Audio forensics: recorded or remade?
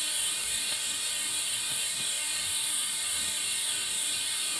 remade